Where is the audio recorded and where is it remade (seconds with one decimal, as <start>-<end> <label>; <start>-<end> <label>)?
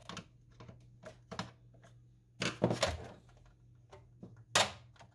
0.0-5.1 recorded